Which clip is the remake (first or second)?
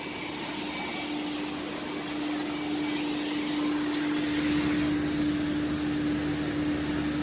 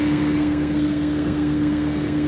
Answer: second